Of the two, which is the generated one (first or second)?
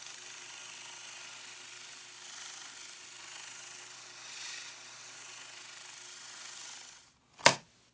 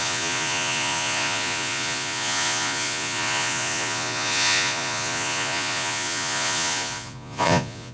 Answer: second